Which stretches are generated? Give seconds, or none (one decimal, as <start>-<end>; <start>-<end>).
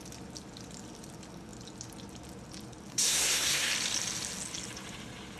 2.9-3.7